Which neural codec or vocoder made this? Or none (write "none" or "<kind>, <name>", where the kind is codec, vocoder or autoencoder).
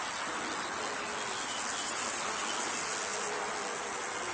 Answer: none